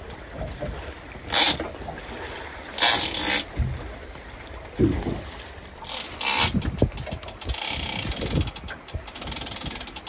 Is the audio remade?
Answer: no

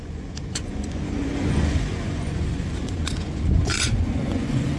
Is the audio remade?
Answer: yes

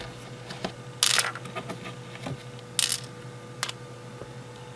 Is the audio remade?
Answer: no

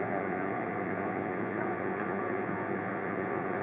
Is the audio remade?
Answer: yes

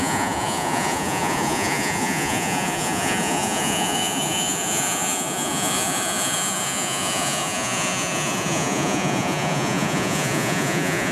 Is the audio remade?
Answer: yes